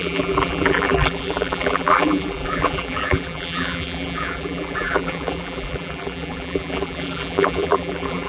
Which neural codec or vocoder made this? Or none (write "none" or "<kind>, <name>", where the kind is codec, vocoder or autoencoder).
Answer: vocoder, BigVGAN v2